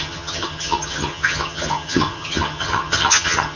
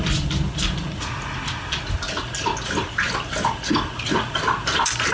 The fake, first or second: first